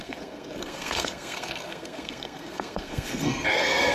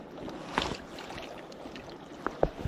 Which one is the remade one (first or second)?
first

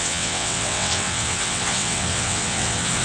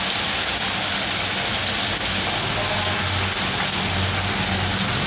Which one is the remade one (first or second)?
first